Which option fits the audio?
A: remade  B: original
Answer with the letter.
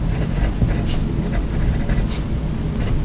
B